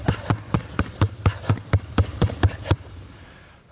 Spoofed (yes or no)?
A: yes